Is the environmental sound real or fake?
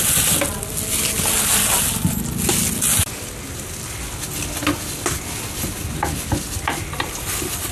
real